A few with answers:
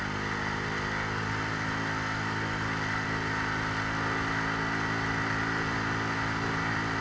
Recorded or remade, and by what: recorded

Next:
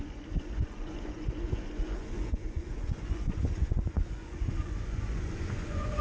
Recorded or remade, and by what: remade, vocoder, Vocos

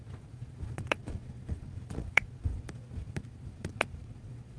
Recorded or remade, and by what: remade, vocoder, Vocos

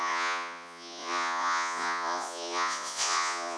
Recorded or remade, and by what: remade, vocoder, Vocos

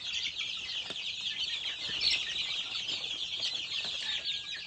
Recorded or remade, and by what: recorded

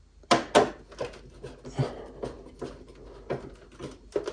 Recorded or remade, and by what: recorded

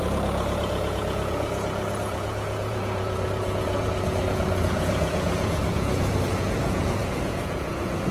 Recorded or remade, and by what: remade, vocoder, Vocos